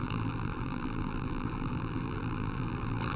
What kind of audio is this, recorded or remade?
remade